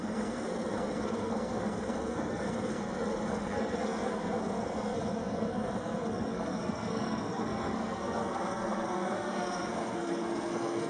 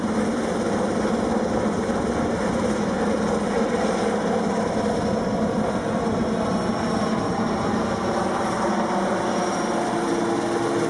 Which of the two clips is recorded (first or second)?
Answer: second